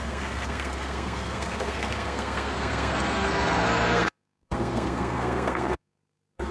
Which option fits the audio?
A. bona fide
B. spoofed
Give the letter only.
B